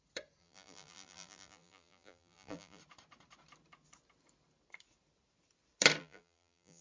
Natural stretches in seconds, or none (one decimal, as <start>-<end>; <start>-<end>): 0.0-0.4; 2.8-6.0